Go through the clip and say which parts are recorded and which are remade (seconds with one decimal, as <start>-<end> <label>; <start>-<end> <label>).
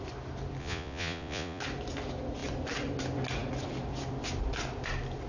0.0-0.6 recorded; 0.6-1.6 remade; 1.6-5.3 recorded